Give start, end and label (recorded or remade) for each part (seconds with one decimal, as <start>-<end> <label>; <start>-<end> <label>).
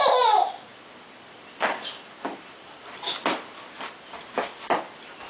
0.0-0.7 recorded; 0.7-3.9 remade; 3.9-5.3 recorded